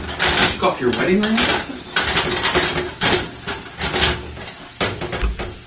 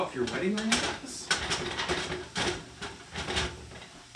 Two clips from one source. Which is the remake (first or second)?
second